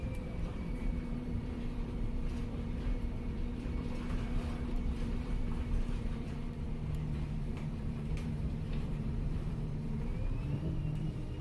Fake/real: fake